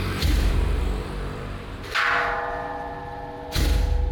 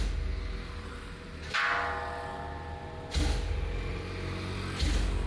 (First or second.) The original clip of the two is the second